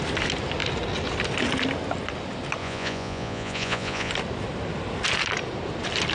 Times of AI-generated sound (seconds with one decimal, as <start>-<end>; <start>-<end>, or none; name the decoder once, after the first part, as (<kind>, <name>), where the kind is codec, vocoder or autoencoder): 2.6-4.1 (vocoder, Vocos)